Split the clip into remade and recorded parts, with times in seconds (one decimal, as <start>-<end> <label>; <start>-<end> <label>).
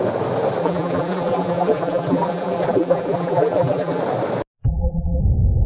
0.0-0.6 recorded; 0.6-4.0 remade; 4.0-4.6 recorded; 4.6-5.2 remade; 5.2-5.7 recorded